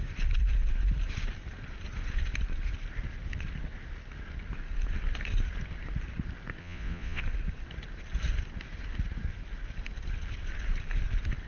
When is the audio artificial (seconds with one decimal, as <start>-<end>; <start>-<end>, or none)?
6.6-7.2

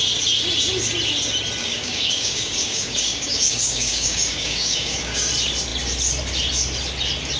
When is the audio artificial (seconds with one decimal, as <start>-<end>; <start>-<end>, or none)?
1.6-5.3